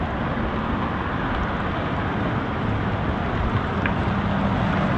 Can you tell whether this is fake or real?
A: real